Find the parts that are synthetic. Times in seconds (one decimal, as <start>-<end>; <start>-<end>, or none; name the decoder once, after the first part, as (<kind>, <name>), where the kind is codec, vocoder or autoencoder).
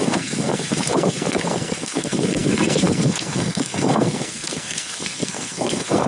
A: 0.0-6.1 (codec, SNAC)